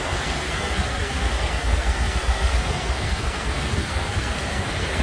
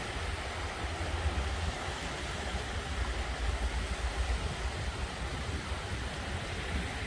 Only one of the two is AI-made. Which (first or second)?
first